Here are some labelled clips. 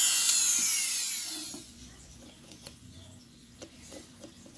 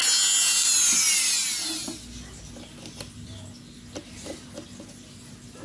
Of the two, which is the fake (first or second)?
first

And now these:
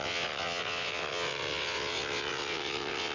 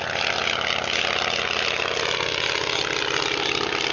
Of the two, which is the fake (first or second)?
first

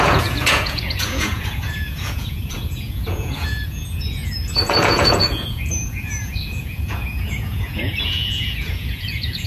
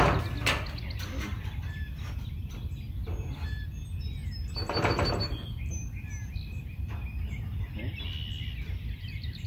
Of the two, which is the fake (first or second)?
first